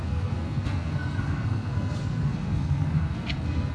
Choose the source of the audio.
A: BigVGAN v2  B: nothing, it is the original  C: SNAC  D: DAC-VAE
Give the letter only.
C